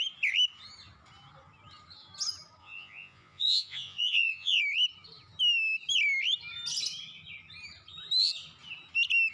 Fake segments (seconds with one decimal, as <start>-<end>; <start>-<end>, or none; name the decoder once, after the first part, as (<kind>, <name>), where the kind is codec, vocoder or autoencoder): 2.6-4.6 (vocoder, Vocos)